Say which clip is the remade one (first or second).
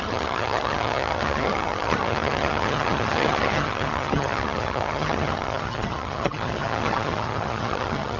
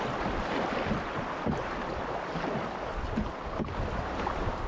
first